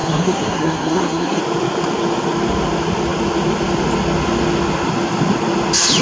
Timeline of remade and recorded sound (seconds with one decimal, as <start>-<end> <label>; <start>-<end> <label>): 0.0-1.4 remade; 1.4-6.0 recorded

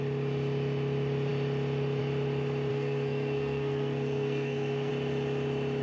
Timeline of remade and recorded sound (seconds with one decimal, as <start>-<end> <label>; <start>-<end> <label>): 0.0-2.7 recorded; 2.7-4.9 remade; 4.9-5.8 recorded

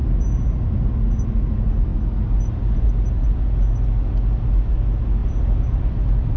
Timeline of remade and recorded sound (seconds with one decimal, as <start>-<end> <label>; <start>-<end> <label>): 0.0-0.7 remade; 0.7-5.2 recorded; 5.2-6.4 remade

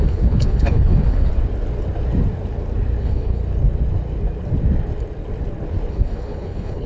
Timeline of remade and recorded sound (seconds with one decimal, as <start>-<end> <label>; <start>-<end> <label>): 0.0-1.3 remade; 1.3-3.0 recorded; 3.0-3.4 remade; 3.4-5.9 recorded; 5.9-6.9 remade

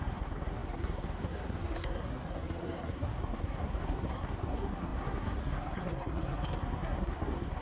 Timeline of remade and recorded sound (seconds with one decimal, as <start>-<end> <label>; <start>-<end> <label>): 0.0-7.6 remade

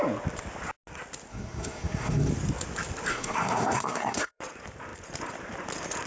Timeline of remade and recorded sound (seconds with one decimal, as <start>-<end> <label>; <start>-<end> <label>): 0.0-1.3 recorded; 1.3-2.3 remade; 2.3-3.1 recorded; 3.1-4.4 remade; 4.4-6.1 recorded

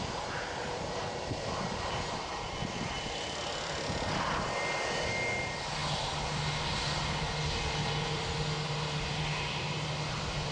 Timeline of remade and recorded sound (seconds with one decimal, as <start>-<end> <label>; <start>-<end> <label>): 0.0-10.5 recorded